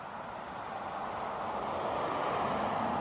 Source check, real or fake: real